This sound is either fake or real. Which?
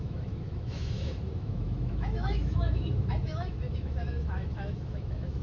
fake